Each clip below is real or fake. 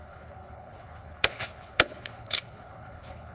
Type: fake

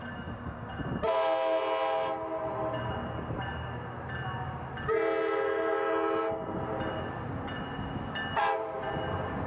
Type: real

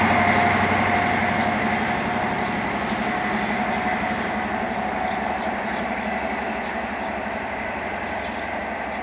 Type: real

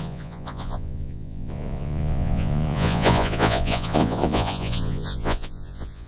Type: fake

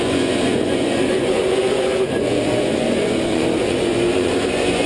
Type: fake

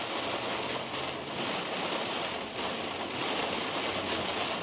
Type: real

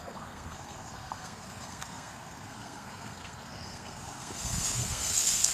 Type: fake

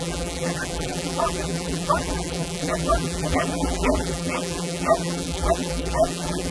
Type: fake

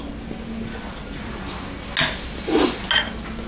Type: real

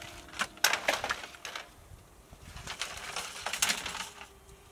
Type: real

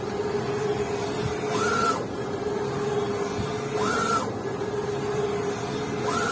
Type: real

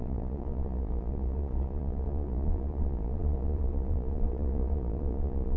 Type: fake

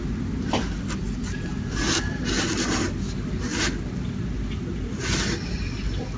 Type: real